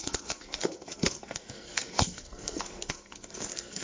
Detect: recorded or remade remade